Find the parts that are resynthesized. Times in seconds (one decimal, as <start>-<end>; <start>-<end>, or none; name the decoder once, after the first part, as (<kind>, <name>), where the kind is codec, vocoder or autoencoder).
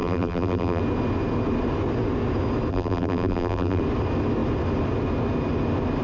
0.0-0.8 (vocoder, BigVGAN v2); 2.7-3.8